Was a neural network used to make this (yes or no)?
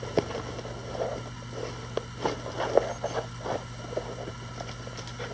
no